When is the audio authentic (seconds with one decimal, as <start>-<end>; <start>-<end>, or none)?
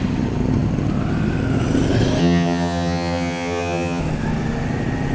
0.0-2.2; 4.0-5.1